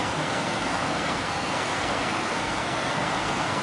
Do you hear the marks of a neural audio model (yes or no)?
yes